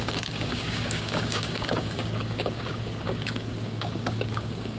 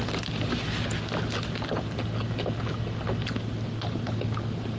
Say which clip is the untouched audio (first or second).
second